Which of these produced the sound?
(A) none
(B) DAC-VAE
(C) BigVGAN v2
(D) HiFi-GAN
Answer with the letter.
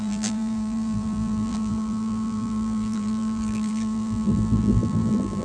C